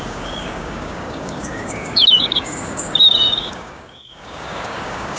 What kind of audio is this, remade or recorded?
remade